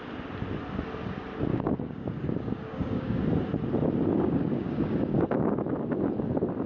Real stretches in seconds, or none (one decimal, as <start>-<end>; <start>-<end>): 0.0-1.5; 3.2-4.1; 5.5-6.7